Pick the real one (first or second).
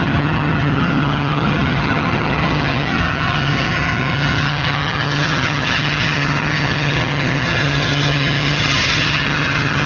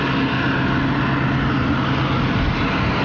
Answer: second